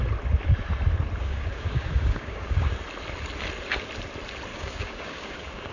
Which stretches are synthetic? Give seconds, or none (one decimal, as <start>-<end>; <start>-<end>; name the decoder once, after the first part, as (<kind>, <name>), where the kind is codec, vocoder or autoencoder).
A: 1.2-2.7 (codec, DAC); 4.5-5.7

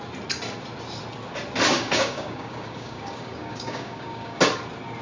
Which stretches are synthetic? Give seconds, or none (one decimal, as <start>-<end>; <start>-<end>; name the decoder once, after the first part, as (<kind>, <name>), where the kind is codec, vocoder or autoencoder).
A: 1.7-4.4 (codec, DAC)